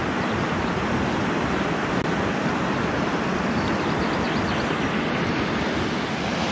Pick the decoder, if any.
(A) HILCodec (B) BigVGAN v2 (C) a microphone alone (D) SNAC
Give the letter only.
C